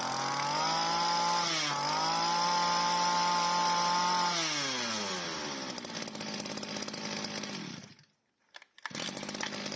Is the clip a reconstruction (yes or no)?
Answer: no